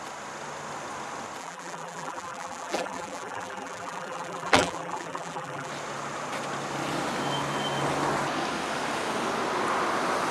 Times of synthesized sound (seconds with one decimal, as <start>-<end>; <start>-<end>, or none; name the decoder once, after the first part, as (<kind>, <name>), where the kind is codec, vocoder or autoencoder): 1.4-5.7 (vocoder, BigVGAN v2)